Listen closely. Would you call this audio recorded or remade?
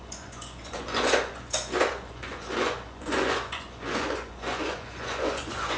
remade